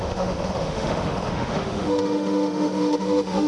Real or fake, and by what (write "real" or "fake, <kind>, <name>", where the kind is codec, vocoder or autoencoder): fake, autoencoder, DAC-VAE